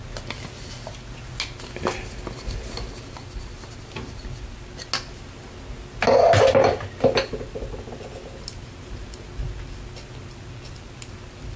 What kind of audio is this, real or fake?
real